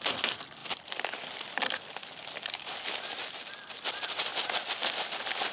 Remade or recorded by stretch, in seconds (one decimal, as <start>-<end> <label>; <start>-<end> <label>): 0.0-5.5 recorded